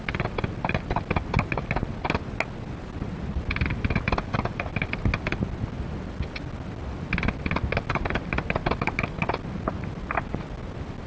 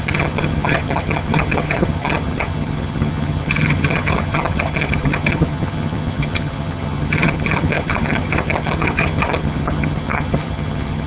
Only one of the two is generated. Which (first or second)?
second